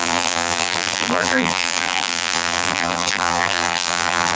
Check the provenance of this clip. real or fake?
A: fake